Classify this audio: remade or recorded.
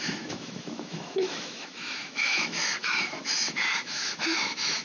remade